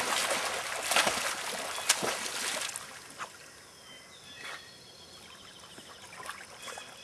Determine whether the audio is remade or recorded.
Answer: recorded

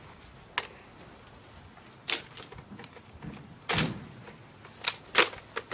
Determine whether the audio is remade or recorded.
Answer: recorded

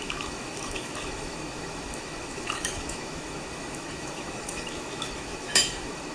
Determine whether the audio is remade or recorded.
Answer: remade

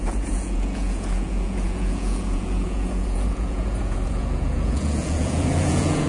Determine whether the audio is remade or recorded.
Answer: remade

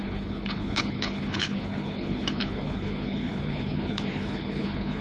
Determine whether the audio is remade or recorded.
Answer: remade